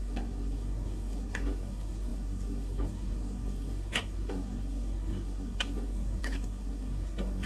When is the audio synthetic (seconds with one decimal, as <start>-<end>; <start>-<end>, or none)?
0.0-7.5